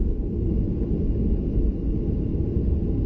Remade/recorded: recorded